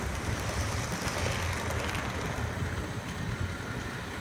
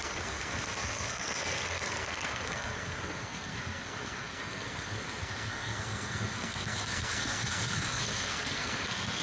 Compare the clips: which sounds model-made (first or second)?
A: second